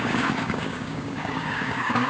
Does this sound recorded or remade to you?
remade